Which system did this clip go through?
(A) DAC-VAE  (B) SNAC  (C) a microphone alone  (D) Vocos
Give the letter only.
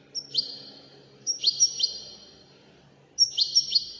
C